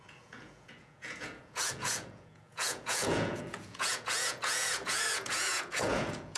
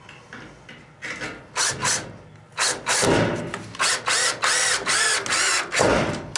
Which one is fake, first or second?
first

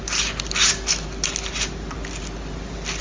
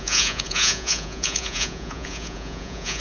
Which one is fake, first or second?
second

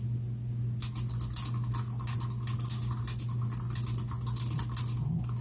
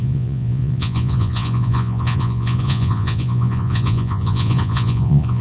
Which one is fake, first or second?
second